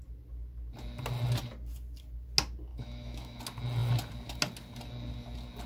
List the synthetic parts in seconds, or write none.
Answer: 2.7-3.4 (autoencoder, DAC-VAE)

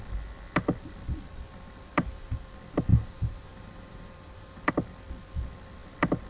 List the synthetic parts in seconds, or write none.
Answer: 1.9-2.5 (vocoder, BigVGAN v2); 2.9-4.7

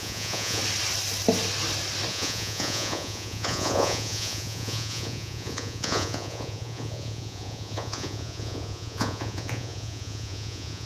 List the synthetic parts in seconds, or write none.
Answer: 0.0-0.6 (vocoder, Vocos); 2.1-10.9

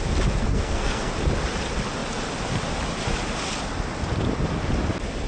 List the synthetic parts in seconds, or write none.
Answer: 0.4-1.1 (codec, SNAC)

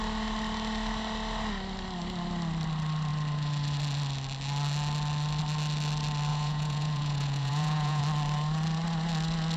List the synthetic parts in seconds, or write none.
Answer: 6.3-8.0 (vocoder, Vocos)